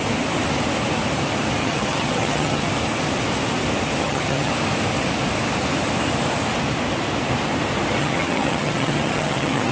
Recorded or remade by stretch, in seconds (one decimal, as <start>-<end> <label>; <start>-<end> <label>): 0.0-1.6 recorded; 1.6-2.7 remade; 2.7-4.0 recorded; 4.0-4.5 remade; 4.5-8.0 recorded; 8.0-9.7 remade